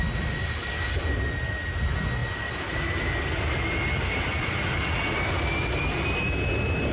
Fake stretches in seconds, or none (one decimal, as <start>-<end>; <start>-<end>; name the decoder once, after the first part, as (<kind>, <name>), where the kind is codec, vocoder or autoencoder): 2.2-6.3 (vocoder, BigVGAN v2)